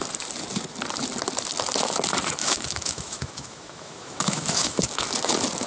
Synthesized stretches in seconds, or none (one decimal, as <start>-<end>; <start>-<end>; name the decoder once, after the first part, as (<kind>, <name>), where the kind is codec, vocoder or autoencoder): 2.4-5.1 (autoencoder, DAC-VAE)